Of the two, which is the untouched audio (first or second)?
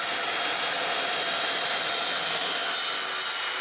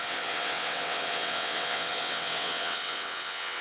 first